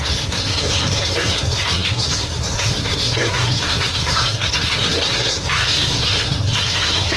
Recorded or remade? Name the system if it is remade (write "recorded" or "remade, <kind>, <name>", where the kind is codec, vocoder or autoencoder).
remade, codec, SNAC